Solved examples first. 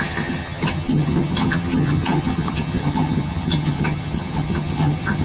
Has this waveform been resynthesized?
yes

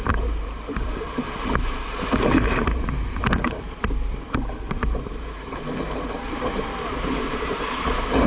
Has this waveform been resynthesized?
yes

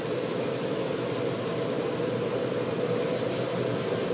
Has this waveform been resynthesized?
no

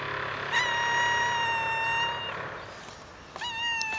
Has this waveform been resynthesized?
no